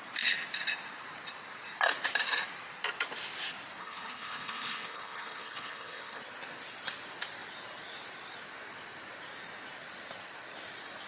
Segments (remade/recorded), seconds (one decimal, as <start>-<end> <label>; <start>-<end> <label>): 0.0-3.8 recorded; 3.8-6.2 remade; 6.2-11.1 recorded